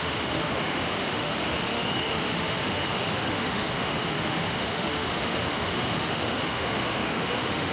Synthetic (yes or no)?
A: yes